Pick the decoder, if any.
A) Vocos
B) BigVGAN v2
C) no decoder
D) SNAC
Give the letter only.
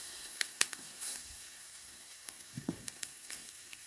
D